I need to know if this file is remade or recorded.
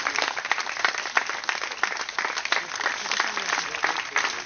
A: recorded